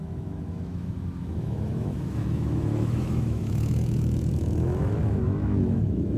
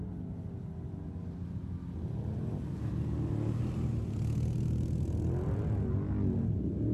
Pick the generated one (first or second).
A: first